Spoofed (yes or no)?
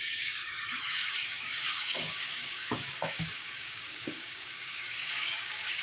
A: yes